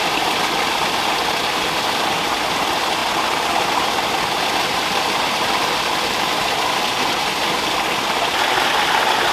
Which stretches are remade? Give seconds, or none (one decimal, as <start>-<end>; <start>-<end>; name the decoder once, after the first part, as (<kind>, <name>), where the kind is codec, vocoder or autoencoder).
none